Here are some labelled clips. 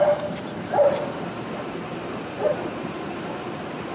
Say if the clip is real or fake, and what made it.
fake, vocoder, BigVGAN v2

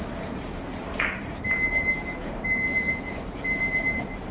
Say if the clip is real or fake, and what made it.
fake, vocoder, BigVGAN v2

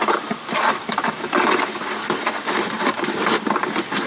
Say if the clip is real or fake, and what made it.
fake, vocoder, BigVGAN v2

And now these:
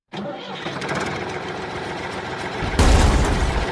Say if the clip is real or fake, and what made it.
fake, vocoder, BigVGAN v2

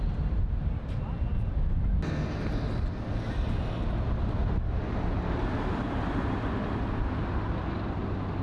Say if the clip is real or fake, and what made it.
real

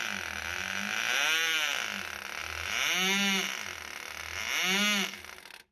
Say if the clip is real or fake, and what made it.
real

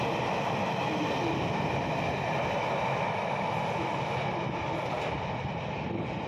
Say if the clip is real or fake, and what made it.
real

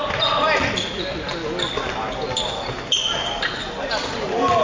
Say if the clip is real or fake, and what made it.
real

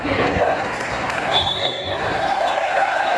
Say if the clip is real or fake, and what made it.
fake, codec, SNAC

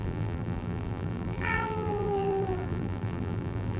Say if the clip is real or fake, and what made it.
fake, vocoder, BigVGAN v2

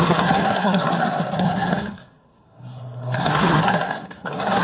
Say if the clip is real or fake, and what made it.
fake, codec, SNAC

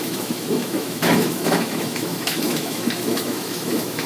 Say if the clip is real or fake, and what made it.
fake, autoencoder, DAC-VAE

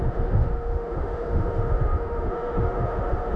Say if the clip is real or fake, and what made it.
fake, autoencoder, DAC-VAE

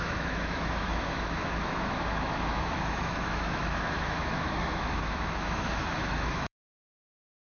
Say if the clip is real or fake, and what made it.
fake, autoencoder, DAC-VAE